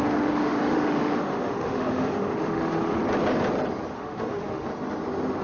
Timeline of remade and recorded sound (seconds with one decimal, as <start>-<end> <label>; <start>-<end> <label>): 0.0-3.0 remade; 3.0-3.9 recorded; 3.9-4.7 remade; 4.7-5.4 recorded